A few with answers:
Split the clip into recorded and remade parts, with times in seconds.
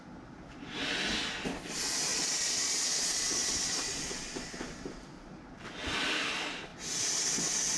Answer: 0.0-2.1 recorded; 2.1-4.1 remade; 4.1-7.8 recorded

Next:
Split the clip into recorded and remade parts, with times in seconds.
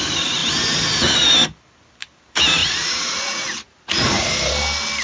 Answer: 0.0-2.6 recorded; 2.6-4.3 remade; 4.3-5.0 recorded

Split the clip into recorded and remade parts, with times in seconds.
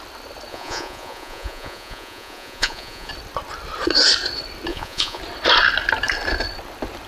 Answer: 0.0-0.5 recorded; 0.5-3.1 remade; 3.1-4.7 recorded; 4.7-5.2 remade; 5.2-7.1 recorded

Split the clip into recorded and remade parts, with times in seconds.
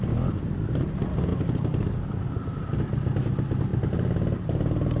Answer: 0.0-5.0 recorded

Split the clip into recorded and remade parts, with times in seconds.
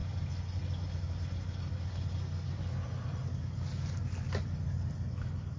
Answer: 0.0-5.6 recorded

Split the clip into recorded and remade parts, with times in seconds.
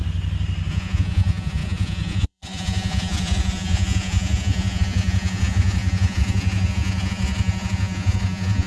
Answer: 0.0-0.7 recorded; 0.7-8.7 remade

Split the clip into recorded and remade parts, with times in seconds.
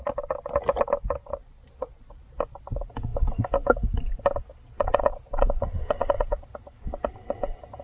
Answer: 0.0-1.2 recorded; 1.2-2.2 remade; 2.2-4.5 recorded; 4.5-6.5 remade; 6.5-7.8 recorded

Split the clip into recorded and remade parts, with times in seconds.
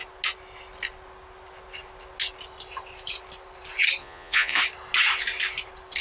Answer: 0.0-4.0 recorded; 4.0-4.6 remade; 4.6-6.0 recorded